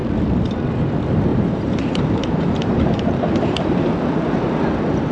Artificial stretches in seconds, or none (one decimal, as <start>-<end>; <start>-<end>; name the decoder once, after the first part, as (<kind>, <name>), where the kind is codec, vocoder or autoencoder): 0.0-0.9 (vocoder, BigVGAN v2); 1.3-4.4